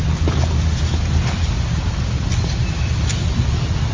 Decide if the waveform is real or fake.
real